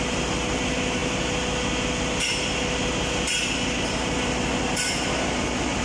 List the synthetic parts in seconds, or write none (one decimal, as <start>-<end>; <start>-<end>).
none

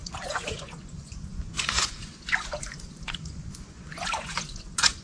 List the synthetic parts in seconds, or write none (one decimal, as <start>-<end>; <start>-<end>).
0.0-5.0